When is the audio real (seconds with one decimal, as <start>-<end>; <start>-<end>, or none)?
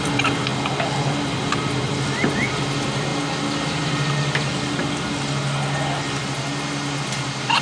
0.0-7.6